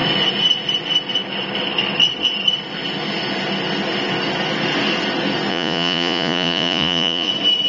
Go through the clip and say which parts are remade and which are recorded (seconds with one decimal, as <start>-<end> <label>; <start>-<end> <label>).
0.0-5.5 recorded; 5.5-7.3 remade; 7.3-7.7 recorded